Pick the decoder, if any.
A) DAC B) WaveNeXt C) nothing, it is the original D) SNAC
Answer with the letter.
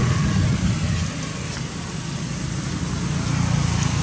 C